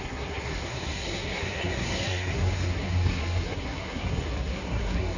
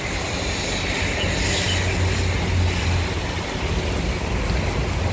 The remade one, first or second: first